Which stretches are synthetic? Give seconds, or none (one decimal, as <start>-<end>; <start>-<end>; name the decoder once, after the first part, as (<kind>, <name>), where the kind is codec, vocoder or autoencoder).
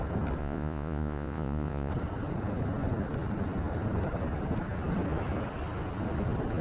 0.4-1.9 (vocoder, Vocos)